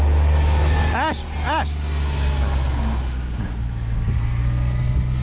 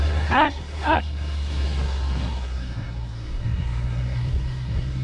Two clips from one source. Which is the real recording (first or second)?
first